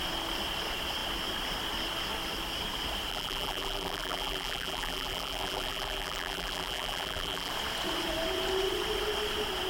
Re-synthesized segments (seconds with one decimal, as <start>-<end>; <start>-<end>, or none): 3.1-7.5